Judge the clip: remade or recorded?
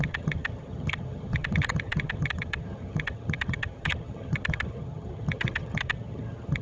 remade